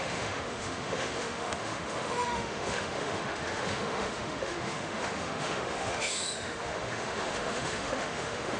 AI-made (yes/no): yes